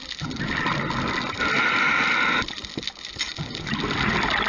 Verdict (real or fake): real